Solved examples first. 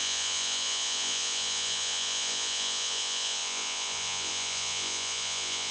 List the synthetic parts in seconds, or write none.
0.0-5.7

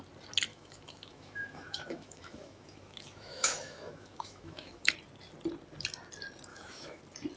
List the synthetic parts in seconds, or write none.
0.5-4.9; 6.5-7.0

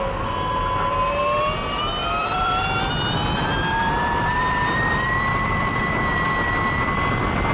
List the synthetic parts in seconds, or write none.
2.0-5.9

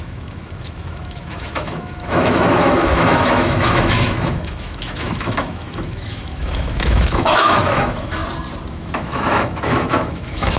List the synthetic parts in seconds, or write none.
0.0-8.2; 8.7-10.6

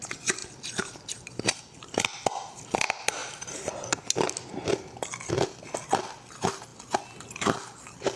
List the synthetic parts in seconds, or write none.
0.4-1.5; 3.2-3.7

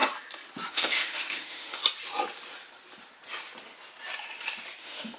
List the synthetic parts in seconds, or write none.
0.7-1.8; 4.8-5.2

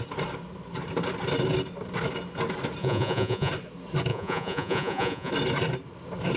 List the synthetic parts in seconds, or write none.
2.8-3.5; 4.1-5.3